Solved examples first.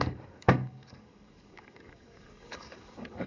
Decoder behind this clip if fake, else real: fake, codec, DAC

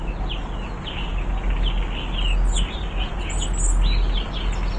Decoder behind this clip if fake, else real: real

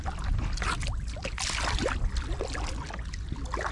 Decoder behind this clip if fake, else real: real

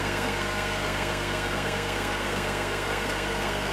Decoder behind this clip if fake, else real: fake, codec, SNAC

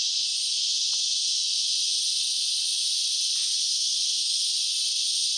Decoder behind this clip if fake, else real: real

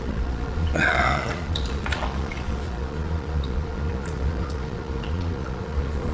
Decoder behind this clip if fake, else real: fake, vocoder, Vocos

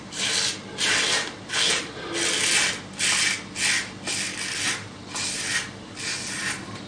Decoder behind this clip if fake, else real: real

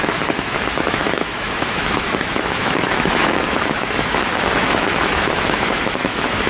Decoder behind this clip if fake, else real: fake, autoencoder, DAC-VAE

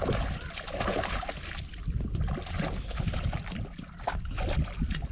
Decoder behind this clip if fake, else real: real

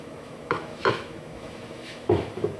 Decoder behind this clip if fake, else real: fake, autoencoder, DAC-VAE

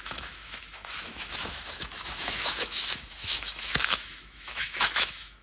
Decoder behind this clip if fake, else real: fake, autoencoder, DAC-VAE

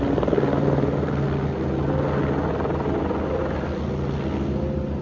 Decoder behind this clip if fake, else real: real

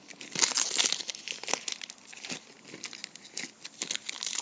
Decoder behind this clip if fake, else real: real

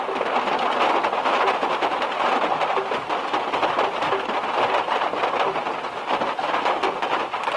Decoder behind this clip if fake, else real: real